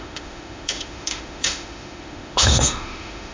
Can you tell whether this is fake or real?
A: fake